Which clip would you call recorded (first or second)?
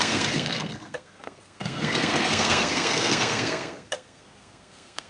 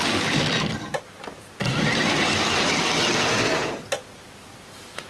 second